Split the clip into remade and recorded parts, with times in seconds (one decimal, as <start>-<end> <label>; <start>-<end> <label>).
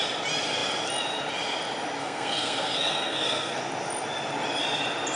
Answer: 0.0-2.0 recorded; 2.0-3.6 remade; 3.6-5.2 recorded